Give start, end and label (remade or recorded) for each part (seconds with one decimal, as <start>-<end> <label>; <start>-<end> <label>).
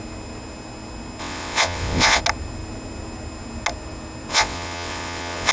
0.0-1.2 recorded; 1.2-2.2 remade; 2.2-4.3 recorded; 4.3-5.5 remade